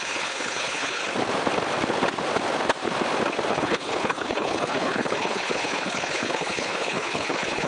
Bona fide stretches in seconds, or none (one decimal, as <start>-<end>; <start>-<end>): 1.0-3.5